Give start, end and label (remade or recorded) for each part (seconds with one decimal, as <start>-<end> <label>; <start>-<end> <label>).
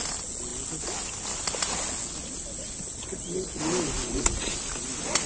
0.0-4.0 recorded; 4.0-4.6 remade; 4.6-5.3 recorded